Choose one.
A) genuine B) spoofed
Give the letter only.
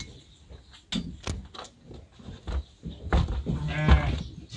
A